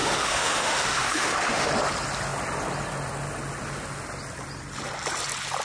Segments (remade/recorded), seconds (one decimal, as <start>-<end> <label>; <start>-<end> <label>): 0.0-1.7 remade; 1.7-5.6 recorded